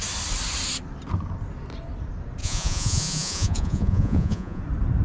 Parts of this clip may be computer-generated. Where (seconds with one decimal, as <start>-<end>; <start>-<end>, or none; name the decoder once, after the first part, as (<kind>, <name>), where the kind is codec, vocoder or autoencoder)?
2.4-4.6 (vocoder, Vocos)